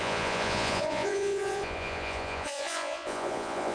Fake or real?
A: fake